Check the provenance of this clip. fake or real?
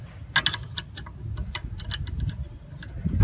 real